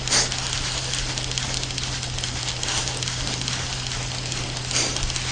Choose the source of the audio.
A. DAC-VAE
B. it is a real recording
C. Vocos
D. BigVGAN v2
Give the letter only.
B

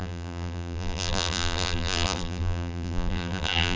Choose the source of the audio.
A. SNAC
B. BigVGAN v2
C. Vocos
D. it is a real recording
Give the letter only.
B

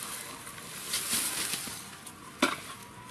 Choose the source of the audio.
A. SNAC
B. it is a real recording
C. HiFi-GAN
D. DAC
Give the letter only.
B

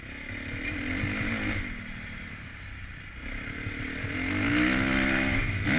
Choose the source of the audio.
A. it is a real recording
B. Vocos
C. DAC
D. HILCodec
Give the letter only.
A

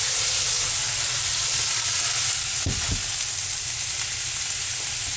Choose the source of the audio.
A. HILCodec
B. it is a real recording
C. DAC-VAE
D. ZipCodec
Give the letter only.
B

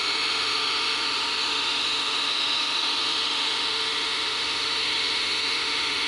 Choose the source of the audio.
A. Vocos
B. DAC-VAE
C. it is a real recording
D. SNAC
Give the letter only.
B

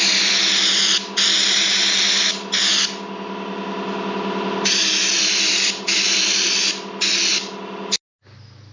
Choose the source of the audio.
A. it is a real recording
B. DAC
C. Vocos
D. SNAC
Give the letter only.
A